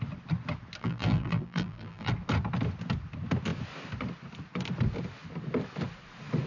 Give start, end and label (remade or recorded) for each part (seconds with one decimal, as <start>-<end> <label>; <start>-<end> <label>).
0.0-0.8 recorded; 0.8-2.1 remade; 2.1-6.5 recorded